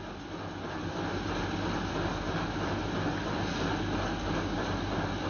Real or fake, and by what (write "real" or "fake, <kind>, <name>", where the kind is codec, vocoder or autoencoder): real